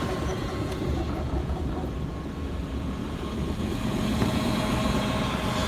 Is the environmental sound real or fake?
fake